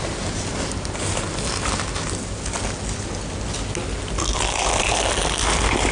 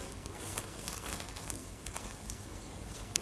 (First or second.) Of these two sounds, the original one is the first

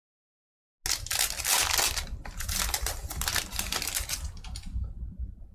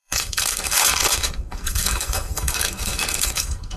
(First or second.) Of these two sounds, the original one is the first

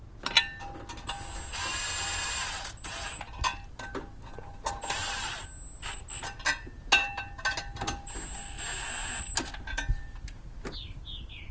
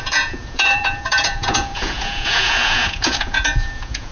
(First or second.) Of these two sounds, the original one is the first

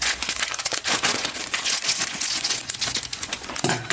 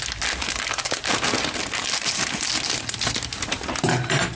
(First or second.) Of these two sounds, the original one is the second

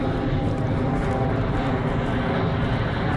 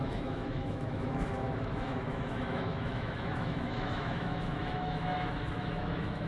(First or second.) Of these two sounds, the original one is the first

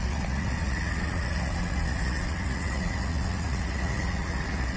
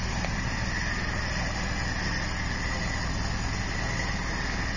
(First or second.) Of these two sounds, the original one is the second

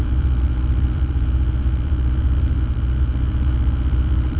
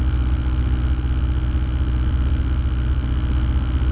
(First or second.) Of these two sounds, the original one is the second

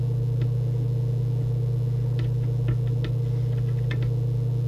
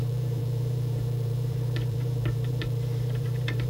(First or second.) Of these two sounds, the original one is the first